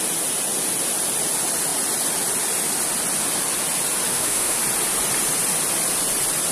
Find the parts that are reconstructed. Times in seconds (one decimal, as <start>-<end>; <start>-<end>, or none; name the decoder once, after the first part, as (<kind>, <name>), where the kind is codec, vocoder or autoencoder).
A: 4.1-4.6 (autoencoder, DAC-VAE)